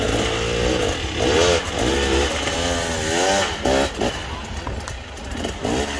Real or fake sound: real